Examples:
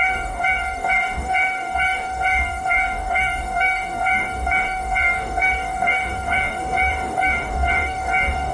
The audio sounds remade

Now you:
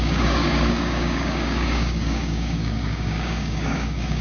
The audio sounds remade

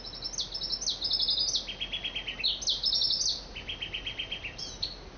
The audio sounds recorded